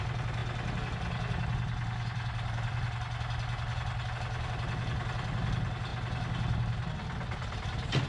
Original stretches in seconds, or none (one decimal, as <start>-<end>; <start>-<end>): 0.0-8.1